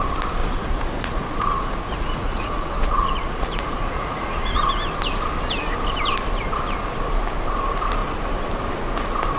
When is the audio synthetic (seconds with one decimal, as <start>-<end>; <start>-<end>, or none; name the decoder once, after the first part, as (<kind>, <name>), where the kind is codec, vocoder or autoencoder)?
0.4-4.7 (vocoder, Vocos)